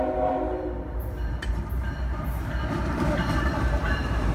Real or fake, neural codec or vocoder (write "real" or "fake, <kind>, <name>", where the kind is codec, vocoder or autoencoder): fake, vocoder, BigVGAN v2